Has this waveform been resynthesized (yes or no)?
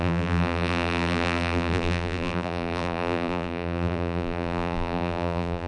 yes